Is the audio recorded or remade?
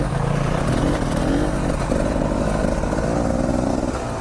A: recorded